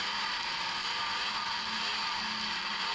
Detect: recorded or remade recorded